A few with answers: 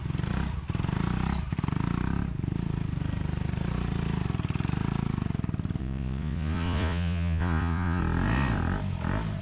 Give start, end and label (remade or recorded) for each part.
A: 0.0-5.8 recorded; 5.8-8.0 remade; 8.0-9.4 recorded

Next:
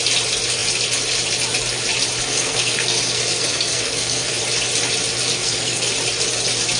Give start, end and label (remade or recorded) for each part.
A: 0.0-2.3 recorded; 2.3-4.4 remade; 4.4-5.3 recorded; 5.3-5.9 remade; 5.9-6.8 recorded

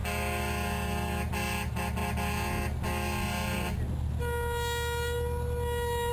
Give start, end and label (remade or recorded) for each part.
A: 0.0-6.1 recorded

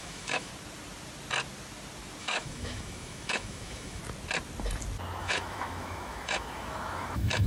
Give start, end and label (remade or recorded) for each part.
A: 0.0-0.5 remade; 0.5-2.2 recorded; 2.2-4.0 remade; 4.0-5.2 recorded; 5.2-7.5 remade

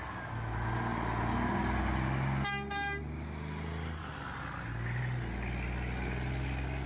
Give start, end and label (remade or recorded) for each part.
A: 0.0-6.9 recorded

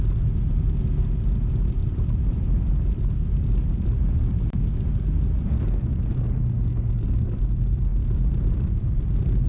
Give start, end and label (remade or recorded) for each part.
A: 0.0-1.8 recorded; 1.8-4.6 remade; 4.6-7.9 recorded; 7.9-9.1 remade; 9.1-9.5 recorded